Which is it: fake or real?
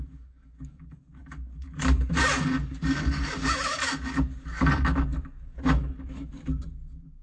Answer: fake